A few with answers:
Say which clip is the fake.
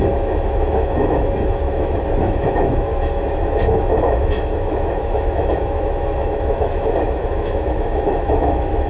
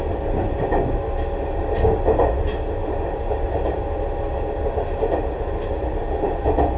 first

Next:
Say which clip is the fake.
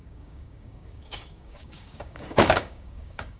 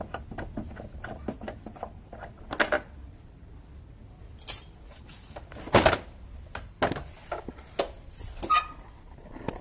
first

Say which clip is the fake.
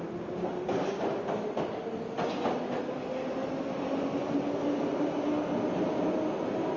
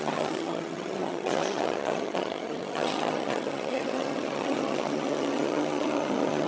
second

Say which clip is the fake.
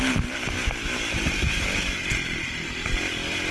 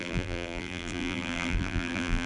second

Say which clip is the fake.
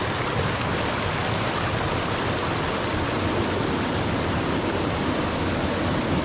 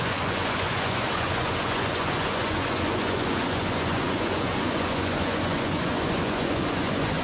second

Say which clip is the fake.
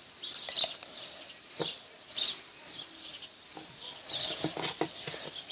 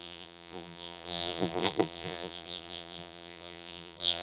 second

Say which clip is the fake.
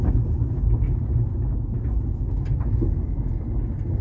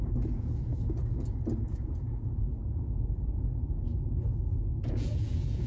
second